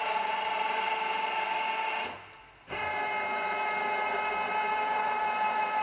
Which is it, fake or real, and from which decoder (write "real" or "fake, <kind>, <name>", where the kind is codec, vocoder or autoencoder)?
real